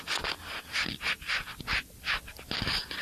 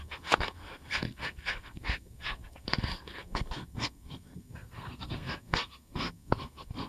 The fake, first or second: second